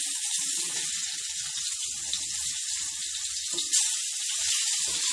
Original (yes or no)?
yes